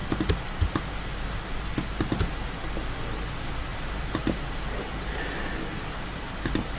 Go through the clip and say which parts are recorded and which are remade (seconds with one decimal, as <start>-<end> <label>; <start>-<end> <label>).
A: 0.0-0.6 remade; 0.6-3.7 recorded; 3.7-4.2 remade; 4.2-6.8 recorded